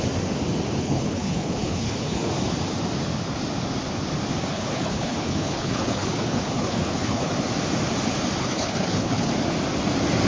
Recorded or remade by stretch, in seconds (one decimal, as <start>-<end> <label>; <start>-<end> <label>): 0.0-0.8 recorded; 0.8-2.3 remade; 2.3-4.5 recorded; 4.5-7.3 remade; 7.3-8.4 recorded; 8.4-9.3 remade; 9.3-10.3 recorded